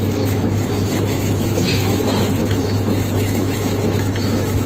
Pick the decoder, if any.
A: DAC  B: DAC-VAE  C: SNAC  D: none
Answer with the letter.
B